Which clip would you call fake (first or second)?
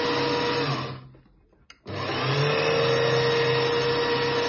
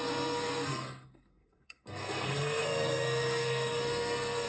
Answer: second